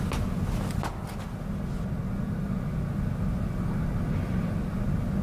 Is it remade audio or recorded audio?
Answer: recorded